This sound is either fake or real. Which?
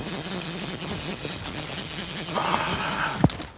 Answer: real